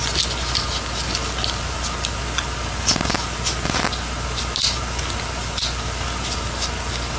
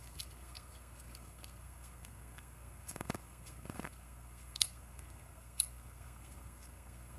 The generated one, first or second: second